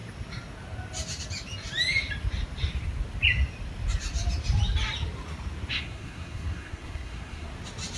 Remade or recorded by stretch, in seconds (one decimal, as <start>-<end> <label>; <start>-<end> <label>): 0.0-5.7 recorded; 5.7-7.5 remade; 7.5-8.0 recorded